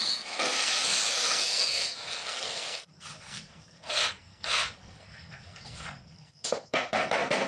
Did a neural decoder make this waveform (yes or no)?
yes